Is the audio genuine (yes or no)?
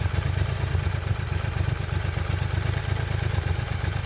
yes